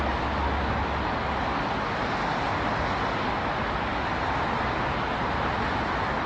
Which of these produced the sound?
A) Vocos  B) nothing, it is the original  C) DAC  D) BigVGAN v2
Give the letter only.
B